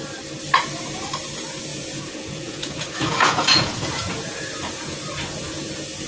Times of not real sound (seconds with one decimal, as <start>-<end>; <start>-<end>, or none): 1.7-5.4